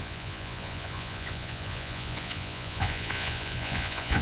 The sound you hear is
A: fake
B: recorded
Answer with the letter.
A